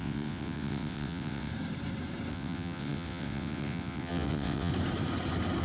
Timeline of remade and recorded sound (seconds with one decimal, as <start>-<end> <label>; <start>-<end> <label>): 0.0-1.5 remade; 1.5-2.3 recorded; 2.3-4.7 remade; 4.7-5.6 recorded